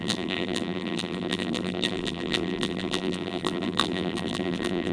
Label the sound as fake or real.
fake